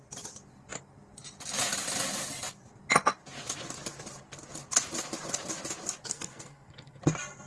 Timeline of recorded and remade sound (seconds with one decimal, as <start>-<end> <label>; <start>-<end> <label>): 0.0-6.1 recorded; 6.1-7.0 remade; 7.0-7.5 recorded